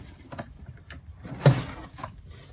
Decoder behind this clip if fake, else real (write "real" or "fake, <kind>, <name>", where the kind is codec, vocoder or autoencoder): real